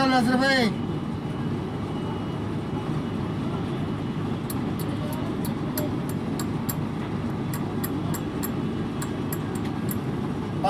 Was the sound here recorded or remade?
recorded